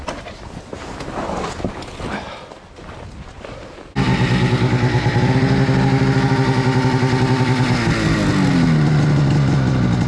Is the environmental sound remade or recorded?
recorded